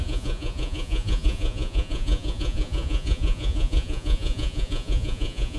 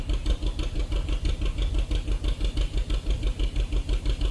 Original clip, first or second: second